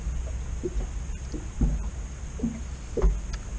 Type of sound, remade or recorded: recorded